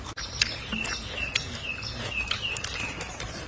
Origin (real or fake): real